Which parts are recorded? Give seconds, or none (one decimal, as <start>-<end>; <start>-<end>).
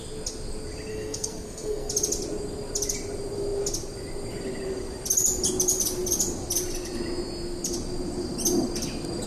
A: 0.0-0.9; 1.9-9.3